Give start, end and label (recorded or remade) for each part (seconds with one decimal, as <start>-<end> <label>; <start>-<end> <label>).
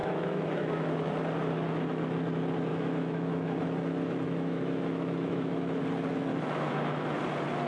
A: 0.0-1.1 remade; 1.1-2.7 recorded; 2.7-5.8 remade; 5.8-6.3 recorded; 6.3-7.2 remade; 7.2-7.7 recorded